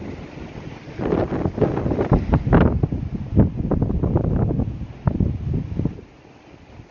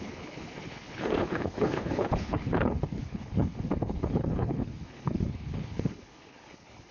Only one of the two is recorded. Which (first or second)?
first